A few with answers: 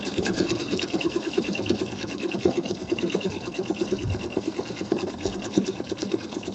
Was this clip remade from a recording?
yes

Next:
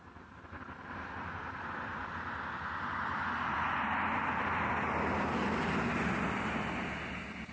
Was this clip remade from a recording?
no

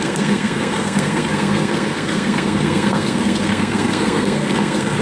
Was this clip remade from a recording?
yes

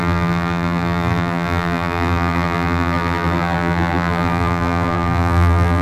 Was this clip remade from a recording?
yes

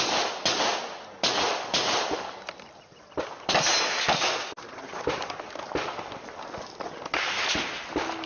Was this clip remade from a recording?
no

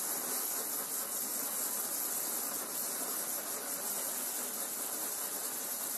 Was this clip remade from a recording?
no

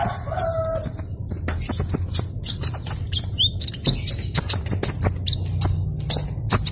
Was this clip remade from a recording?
no